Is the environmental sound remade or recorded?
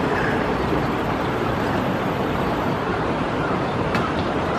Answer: remade